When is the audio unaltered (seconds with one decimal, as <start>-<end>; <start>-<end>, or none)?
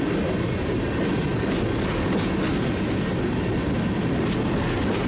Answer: 0.0-5.1